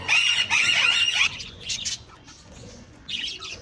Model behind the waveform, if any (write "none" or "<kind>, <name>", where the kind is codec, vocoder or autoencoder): vocoder, Vocos